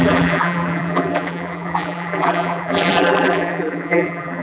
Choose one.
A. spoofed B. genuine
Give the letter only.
A